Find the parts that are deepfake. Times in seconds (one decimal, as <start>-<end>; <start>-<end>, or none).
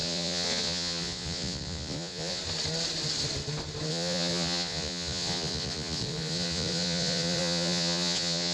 0.0-2.4; 3.9-8.5